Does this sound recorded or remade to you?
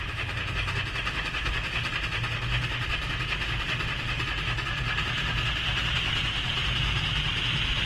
recorded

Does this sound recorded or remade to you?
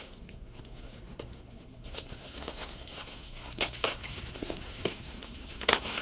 remade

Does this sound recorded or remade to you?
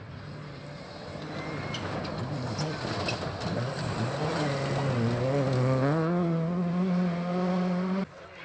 recorded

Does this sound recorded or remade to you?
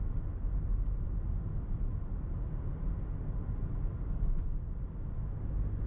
recorded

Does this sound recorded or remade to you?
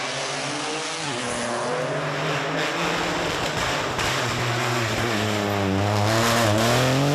recorded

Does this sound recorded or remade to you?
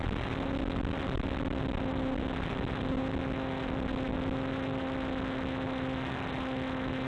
recorded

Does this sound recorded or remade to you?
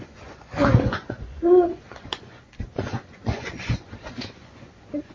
remade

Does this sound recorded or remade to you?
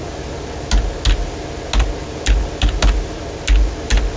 recorded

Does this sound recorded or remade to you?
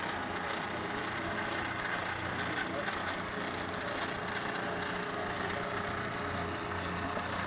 recorded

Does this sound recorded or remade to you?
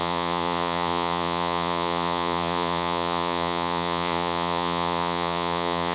remade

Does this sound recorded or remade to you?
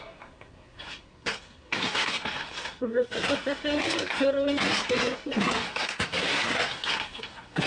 remade